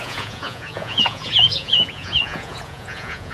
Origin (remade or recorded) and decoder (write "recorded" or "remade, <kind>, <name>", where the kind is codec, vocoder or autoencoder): remade, vocoder, Vocos